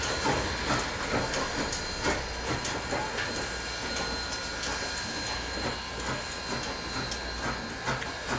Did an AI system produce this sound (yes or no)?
no